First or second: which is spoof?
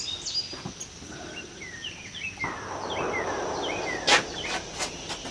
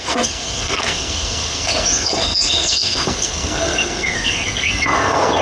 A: second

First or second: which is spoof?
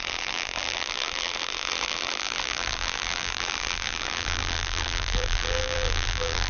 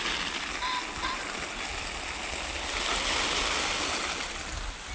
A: first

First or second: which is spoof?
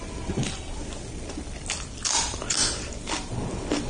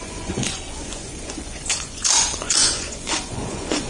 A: second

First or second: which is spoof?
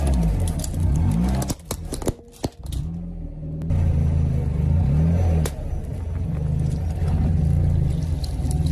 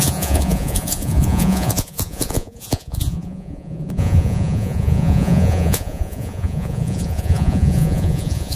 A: second